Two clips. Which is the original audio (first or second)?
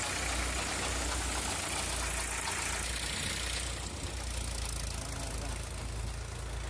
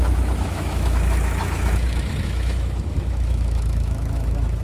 first